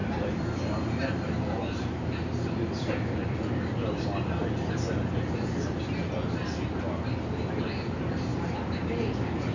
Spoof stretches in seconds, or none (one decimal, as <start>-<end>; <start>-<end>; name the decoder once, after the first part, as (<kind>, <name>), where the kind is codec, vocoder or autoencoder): 0.0-9.5 (vocoder, BigVGAN v2)